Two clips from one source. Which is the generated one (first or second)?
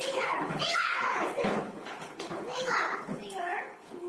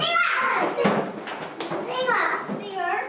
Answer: first